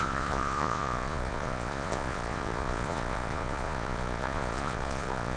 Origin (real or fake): fake